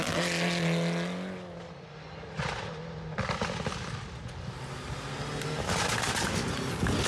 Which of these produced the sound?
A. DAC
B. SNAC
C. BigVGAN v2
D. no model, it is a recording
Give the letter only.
D